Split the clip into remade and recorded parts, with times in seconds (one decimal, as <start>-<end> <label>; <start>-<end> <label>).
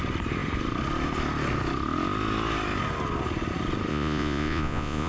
0.0-3.9 recorded; 3.9-5.1 remade